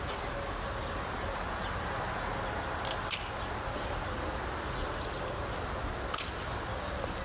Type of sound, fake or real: real